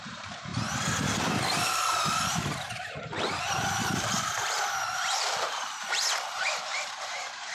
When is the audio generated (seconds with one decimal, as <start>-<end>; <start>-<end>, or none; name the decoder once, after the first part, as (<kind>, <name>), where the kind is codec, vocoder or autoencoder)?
0.0-7.5 (vocoder, BigVGAN v2)